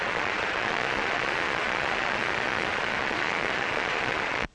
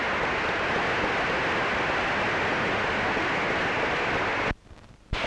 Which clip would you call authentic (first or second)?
second